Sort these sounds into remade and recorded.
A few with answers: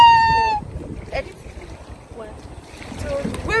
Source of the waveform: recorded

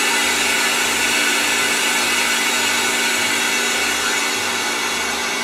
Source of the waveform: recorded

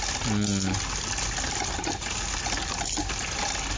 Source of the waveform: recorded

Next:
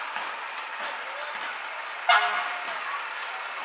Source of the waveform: recorded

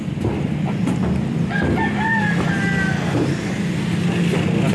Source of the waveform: recorded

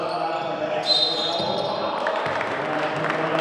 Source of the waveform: recorded